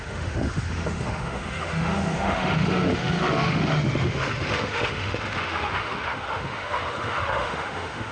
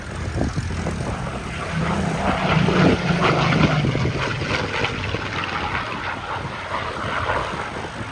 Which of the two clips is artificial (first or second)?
first